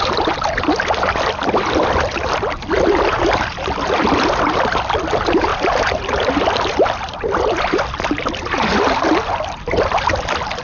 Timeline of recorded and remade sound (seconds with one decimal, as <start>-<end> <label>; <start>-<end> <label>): 0.0-5.5 recorded; 5.5-6.2 remade; 6.2-10.6 recorded